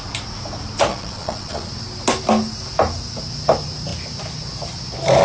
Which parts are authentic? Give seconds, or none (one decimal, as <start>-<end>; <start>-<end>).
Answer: 0.0-0.9; 1.7-5.2